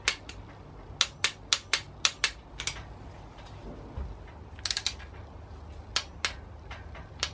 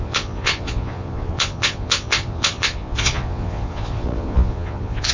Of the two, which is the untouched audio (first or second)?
first